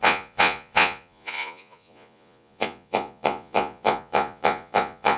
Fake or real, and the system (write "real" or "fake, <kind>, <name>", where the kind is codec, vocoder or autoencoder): fake, vocoder, Vocos